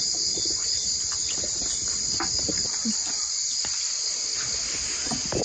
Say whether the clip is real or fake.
real